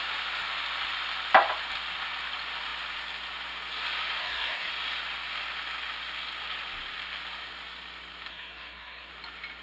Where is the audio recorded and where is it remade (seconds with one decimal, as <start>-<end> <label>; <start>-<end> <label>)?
0.0-4.2 recorded; 4.2-4.7 remade; 4.7-8.3 recorded; 8.3-9.1 remade; 9.1-9.6 recorded